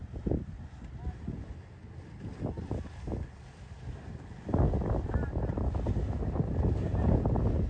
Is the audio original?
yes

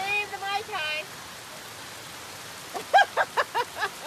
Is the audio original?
yes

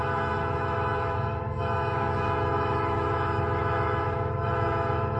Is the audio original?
no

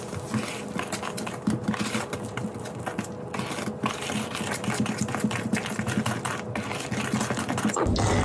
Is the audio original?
yes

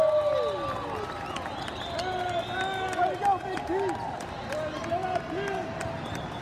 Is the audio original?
yes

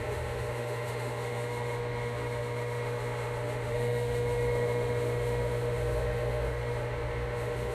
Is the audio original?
no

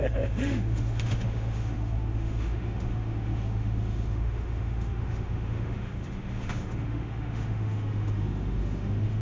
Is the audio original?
no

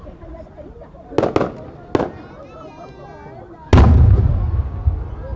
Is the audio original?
yes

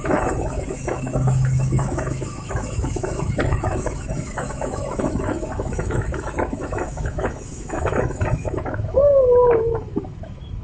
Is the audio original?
no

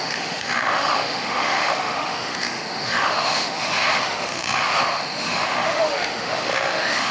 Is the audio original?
no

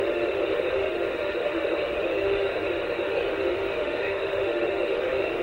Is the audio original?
no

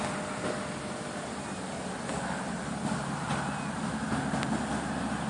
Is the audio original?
yes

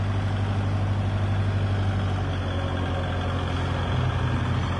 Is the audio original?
yes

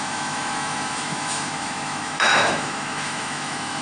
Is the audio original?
no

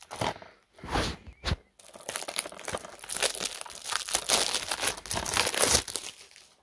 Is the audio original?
yes